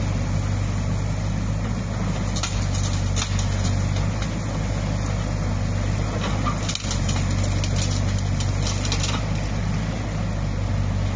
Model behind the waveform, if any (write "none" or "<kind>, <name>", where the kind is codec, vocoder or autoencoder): none